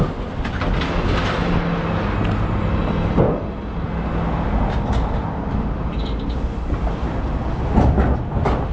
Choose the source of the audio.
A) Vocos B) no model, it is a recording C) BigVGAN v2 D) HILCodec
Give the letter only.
B